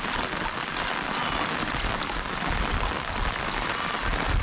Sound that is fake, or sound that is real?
real